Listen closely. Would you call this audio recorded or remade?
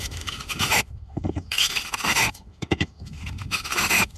remade